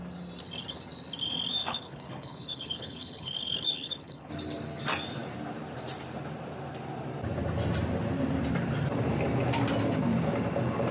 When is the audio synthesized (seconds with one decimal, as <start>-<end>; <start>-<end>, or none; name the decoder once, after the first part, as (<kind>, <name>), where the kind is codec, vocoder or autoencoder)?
1.6-4.3 (codec, HILCodec)